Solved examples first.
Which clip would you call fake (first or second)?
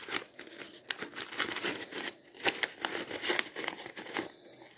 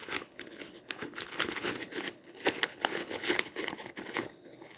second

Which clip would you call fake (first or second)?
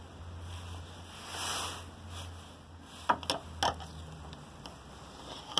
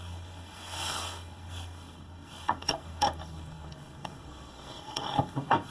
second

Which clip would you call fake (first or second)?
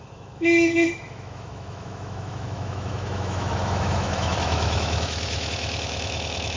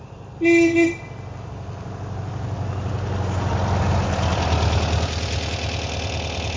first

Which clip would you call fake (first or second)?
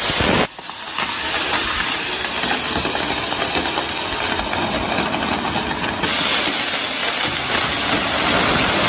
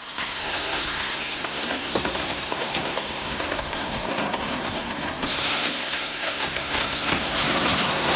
second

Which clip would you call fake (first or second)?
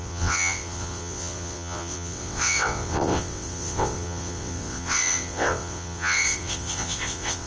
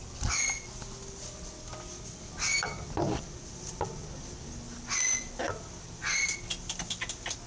first